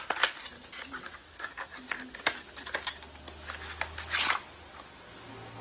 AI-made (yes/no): no